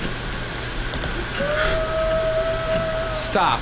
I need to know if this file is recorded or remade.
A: recorded